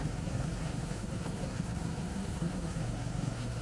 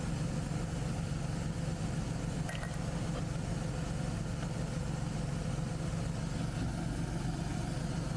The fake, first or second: first